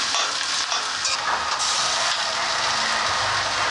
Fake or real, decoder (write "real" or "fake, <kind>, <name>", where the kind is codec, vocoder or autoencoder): real